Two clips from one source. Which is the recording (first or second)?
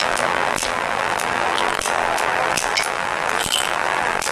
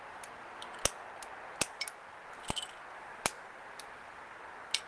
second